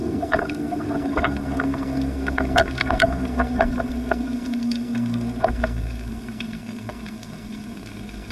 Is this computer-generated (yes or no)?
yes